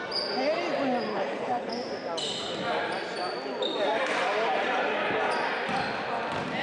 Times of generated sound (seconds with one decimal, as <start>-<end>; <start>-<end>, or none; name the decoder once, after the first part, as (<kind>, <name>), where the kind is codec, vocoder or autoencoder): 1.1-1.7 (codec, HILCodec)